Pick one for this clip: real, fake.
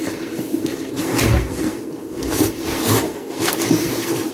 fake